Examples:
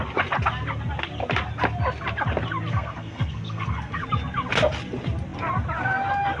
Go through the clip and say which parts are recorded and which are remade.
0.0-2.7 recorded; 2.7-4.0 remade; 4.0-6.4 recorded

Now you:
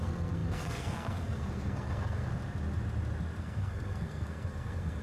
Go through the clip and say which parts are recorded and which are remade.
0.0-2.3 remade; 2.3-3.4 recorded; 3.4-5.0 remade

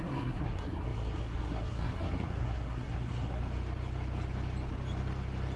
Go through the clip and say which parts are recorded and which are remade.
0.0-3.4 remade; 3.4-5.6 recorded

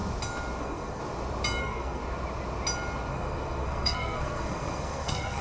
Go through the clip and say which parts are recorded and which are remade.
0.0-0.6 recorded; 0.6-1.0 remade; 1.0-1.6 recorded; 1.6-2.0 remade; 2.0-3.1 recorded; 3.1-5.4 remade

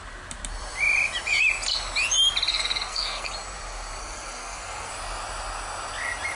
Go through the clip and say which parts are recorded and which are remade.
0.0-2.5 recorded; 2.5-3.3 remade; 3.3-4.0 recorded; 4.0-4.9 remade; 4.9-6.3 recorded

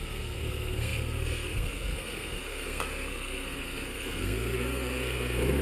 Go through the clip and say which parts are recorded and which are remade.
0.0-5.6 remade

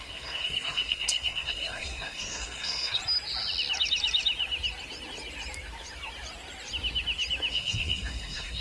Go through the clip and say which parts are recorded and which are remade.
0.0-3.0 remade; 3.0-7.5 recorded; 7.5-8.6 remade

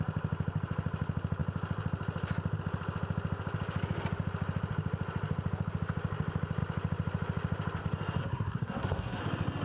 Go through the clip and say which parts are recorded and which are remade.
0.0-8.2 recorded; 8.2-9.2 remade; 9.2-9.6 recorded